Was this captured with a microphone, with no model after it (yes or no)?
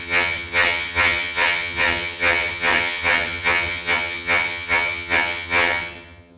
no